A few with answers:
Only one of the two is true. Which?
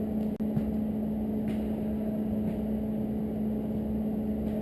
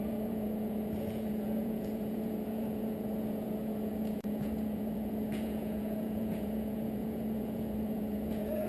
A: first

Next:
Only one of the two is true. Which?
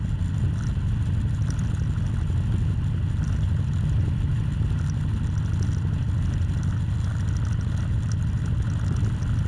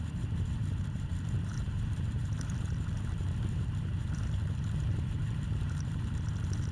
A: first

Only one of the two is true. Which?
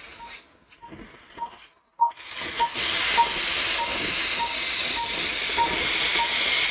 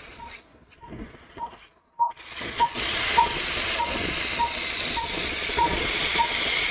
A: first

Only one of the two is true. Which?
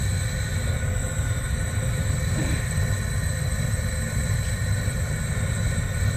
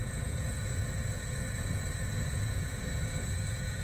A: first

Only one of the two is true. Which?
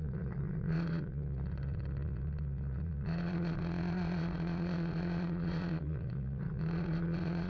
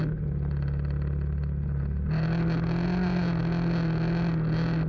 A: second